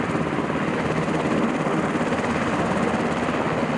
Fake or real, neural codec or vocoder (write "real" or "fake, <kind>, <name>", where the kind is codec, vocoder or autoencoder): real